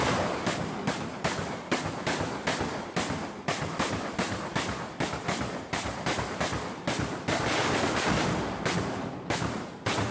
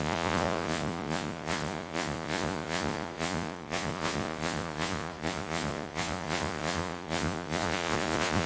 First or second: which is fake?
second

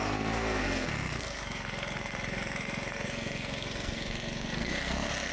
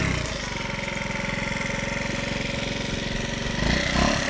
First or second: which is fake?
first